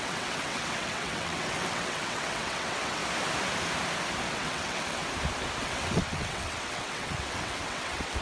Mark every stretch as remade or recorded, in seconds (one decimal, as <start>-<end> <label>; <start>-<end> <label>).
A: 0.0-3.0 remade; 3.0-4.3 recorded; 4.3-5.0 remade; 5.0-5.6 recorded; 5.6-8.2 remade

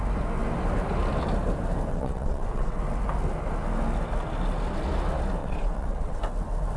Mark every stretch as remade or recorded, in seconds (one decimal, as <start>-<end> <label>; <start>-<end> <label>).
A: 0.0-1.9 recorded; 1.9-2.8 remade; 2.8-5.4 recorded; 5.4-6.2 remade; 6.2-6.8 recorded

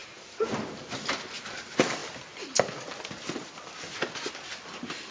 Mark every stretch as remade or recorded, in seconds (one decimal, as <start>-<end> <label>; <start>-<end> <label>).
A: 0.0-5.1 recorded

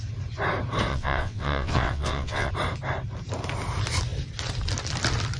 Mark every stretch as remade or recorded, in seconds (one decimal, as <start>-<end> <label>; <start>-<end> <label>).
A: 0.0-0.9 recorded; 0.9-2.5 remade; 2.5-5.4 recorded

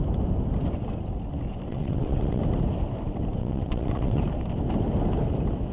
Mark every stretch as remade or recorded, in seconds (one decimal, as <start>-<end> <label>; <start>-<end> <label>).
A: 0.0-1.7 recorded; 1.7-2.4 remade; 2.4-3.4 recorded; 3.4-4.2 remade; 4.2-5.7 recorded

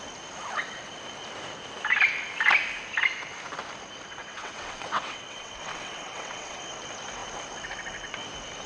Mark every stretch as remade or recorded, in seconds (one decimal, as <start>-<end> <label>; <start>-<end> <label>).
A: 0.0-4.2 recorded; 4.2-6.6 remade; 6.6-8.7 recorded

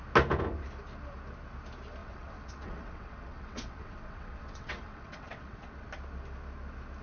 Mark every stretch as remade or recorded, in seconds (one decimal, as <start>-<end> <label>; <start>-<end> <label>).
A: 0.0-2.0 recorded; 2.0-5.9 remade; 5.9-7.0 recorded